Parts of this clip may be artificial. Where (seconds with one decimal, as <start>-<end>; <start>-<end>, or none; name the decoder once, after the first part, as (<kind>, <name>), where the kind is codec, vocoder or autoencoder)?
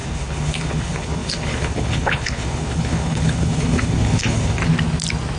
0.0-4.6 (codec, HILCodec)